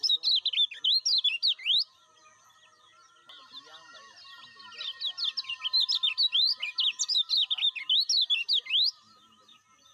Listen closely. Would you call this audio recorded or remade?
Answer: recorded